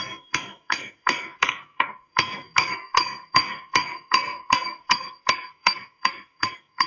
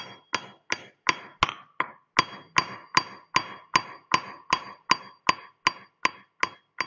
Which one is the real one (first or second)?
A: second